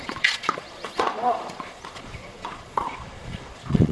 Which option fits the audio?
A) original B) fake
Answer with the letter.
B